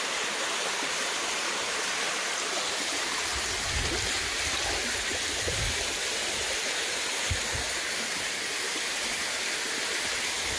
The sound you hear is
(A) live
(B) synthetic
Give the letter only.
A